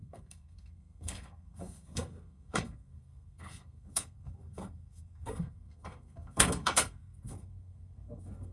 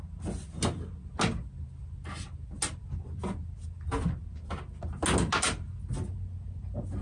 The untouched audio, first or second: second